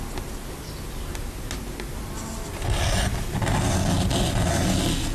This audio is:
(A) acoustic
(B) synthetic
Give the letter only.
A